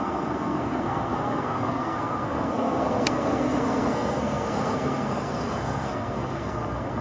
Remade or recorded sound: remade